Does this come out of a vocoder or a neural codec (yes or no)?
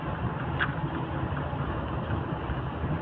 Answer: no